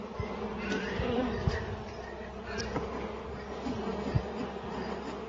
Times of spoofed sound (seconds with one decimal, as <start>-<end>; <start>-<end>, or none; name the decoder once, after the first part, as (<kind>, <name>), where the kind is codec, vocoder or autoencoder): none